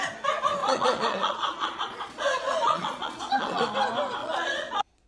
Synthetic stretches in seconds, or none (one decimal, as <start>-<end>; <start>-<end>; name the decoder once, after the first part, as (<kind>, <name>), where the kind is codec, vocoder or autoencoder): 0.6-3.7 (vocoder, Vocos); 4.2-5.1